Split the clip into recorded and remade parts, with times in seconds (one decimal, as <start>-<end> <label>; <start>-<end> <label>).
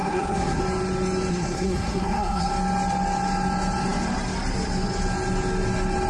0.0-0.6 remade; 0.6-1.3 recorded; 1.3-2.5 remade; 2.5-6.1 recorded